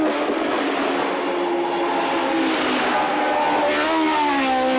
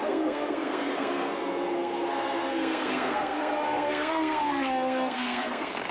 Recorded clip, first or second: first